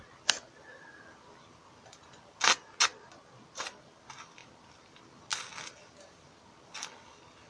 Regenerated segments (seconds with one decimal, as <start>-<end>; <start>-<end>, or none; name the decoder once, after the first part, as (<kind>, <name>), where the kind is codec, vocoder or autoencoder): none